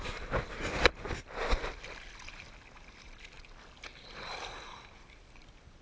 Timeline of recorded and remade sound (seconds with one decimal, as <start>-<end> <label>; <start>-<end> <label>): 0.0-5.8 recorded